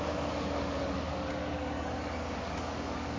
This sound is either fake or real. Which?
fake